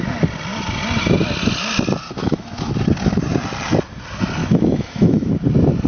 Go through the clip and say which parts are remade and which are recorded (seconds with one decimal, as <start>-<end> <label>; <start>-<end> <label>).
0.0-2.2 recorded; 2.2-2.7 remade; 2.7-4.4 recorded; 4.4-5.3 remade; 5.3-5.9 recorded